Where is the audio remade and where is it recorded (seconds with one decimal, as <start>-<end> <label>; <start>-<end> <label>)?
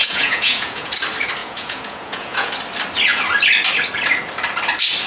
0.0-0.9 remade; 0.9-1.4 recorded; 1.4-2.5 remade; 2.5-5.1 recorded